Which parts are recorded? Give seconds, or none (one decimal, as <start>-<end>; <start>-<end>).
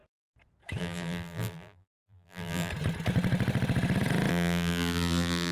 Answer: 0.0-0.8; 2.7-4.3